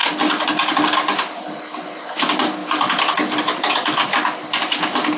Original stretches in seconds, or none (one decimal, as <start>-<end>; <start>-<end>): 0.0-5.2